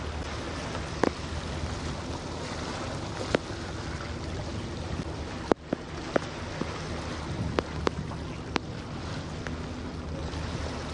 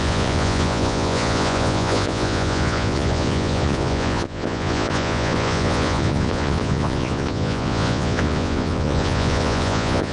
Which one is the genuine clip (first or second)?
first